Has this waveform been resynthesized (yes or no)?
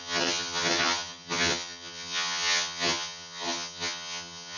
yes